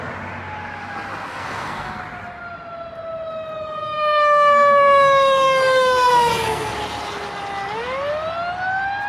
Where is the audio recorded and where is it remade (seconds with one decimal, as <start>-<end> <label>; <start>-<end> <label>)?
0.0-1.3 recorded; 1.3-2.0 remade; 2.0-3.8 recorded; 3.8-6.7 remade; 6.7-9.1 recorded